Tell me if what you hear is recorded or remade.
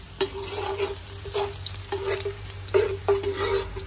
recorded